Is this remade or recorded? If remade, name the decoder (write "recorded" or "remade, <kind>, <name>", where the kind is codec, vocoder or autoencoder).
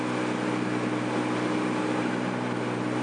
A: recorded